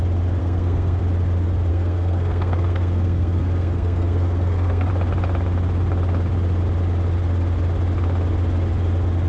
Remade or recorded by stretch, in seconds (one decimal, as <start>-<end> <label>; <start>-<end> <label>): 0.0-0.4 recorded; 0.4-1.0 remade; 1.0-1.7 recorded; 1.7-4.9 remade; 4.9-9.3 recorded